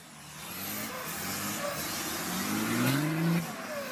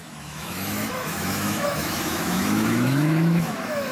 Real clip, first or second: first